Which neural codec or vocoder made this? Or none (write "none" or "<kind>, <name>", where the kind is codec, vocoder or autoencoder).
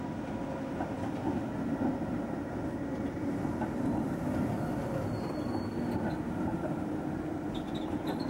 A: none